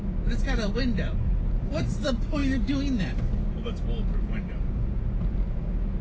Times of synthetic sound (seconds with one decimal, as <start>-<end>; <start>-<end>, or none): none